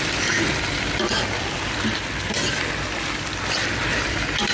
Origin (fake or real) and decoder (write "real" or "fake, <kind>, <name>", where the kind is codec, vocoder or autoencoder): fake, vocoder, BigVGAN v2